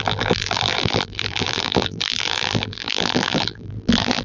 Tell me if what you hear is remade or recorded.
remade